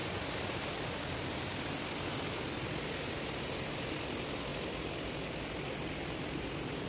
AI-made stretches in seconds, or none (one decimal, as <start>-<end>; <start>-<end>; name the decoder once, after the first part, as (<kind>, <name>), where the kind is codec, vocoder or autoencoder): none